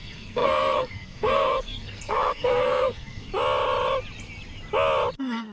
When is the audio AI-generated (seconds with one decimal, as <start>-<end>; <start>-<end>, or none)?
0.0-3.3; 5.1-5.5